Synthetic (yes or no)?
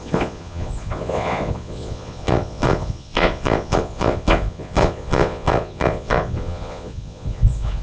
yes